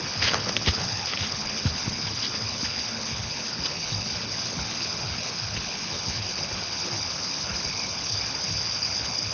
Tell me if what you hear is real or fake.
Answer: fake